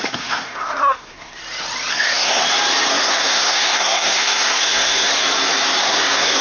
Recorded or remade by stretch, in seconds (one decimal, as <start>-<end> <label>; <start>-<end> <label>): 0.0-1.4 remade; 1.4-1.9 recorded; 1.9-2.4 remade; 2.4-2.9 recorded; 2.9-5.2 remade; 5.2-5.8 recorded; 5.8-6.4 remade